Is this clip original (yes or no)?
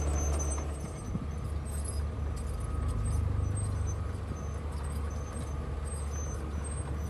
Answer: yes